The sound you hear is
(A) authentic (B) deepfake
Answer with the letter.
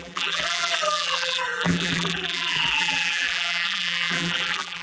B